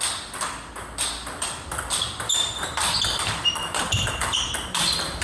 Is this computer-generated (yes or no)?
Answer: no